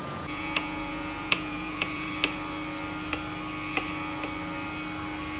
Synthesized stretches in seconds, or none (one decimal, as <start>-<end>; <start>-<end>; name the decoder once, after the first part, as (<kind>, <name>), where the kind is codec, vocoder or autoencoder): 0.0-2.1 (vocoder, Vocos)